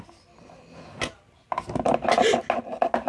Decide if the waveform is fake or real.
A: real